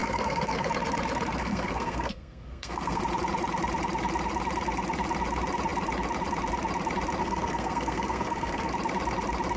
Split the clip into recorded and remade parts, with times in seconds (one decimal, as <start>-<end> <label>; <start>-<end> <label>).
0.0-0.7 remade; 0.7-1.4 recorded; 1.4-3.0 remade; 3.0-7.2 recorded; 7.2-8.7 remade; 8.7-9.6 recorded